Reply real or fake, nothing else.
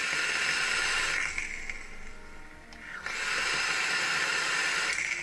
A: real